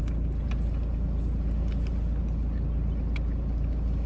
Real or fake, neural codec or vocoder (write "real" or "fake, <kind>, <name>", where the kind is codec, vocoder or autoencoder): real